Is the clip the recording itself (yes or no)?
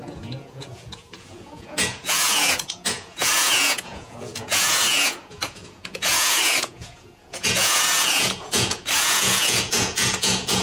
no